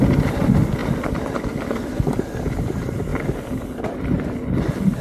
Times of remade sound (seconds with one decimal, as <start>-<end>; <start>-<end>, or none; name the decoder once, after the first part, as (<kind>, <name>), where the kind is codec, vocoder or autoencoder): none

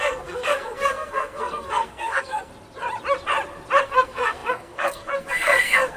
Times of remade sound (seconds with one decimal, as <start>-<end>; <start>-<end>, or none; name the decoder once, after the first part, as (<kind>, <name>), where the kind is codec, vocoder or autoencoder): 0.0-2.5 (codec, SNAC); 3.8-6.0

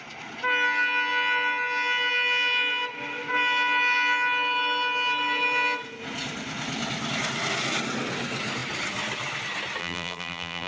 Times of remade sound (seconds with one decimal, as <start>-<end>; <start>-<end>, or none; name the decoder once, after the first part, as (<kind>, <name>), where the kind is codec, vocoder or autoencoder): 9.8-10.7 (vocoder, BigVGAN v2)

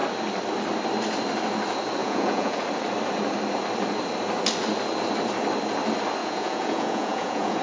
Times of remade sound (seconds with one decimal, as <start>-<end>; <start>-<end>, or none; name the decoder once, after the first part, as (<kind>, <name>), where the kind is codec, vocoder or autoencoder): 2.0-2.6 (vocoder, Vocos); 6.2-7.6